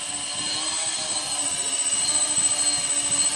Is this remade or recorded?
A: recorded